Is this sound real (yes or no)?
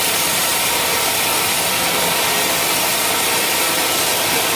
yes